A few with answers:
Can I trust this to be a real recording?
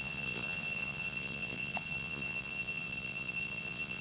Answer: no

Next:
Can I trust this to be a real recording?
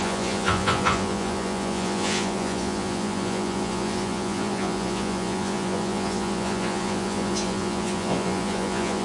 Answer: no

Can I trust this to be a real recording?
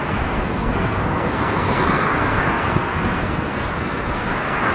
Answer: no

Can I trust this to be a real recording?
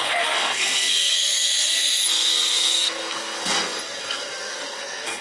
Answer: no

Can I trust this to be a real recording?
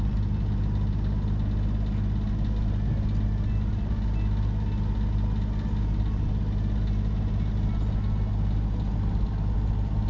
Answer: yes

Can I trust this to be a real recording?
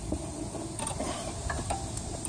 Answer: yes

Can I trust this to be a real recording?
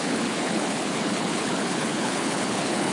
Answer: no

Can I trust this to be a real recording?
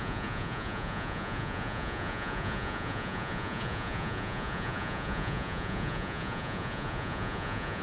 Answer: no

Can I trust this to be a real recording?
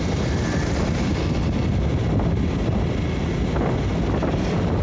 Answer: yes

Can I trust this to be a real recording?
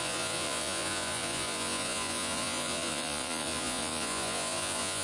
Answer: no